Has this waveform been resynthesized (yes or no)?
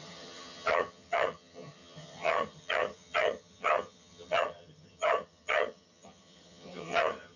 yes